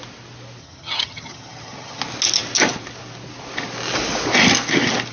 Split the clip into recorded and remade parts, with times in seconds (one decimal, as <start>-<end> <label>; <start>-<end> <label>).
0.0-0.6 recorded; 0.6-2.0 remade; 2.0-5.1 recorded